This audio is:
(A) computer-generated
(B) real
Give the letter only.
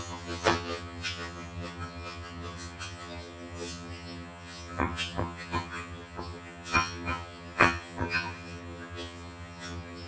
A